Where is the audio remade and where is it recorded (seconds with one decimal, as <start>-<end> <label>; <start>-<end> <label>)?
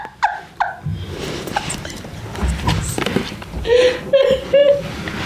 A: 0.0-0.9 recorded; 0.9-4.1 remade; 4.1-5.3 recorded